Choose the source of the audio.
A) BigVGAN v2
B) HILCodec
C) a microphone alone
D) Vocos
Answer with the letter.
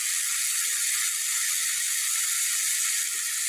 C